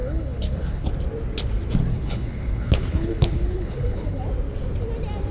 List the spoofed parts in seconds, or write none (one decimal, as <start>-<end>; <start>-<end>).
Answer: 0.0-0.9; 1.9-4.2